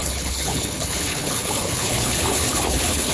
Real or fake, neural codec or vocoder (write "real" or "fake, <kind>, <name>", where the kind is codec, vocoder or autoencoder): fake, codec, HILCodec